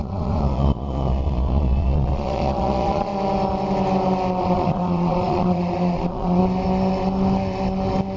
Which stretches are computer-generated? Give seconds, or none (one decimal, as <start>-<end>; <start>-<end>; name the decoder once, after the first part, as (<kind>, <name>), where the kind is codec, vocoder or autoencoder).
0.0-3.1 (vocoder, Vocos); 4.4-6.4